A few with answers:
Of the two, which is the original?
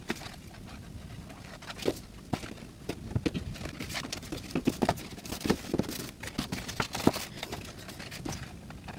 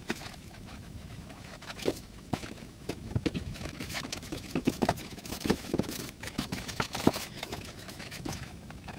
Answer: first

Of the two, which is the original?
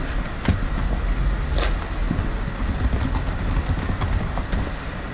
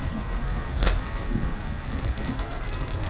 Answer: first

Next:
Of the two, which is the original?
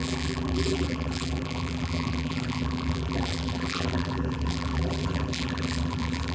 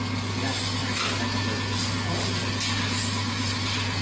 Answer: second